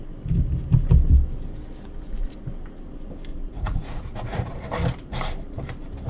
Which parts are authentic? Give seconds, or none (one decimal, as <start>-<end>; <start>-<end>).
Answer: 0.0-3.3; 4.5-6.1